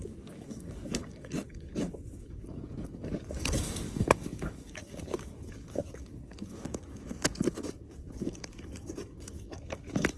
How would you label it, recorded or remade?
remade